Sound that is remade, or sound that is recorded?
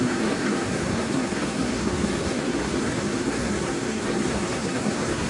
remade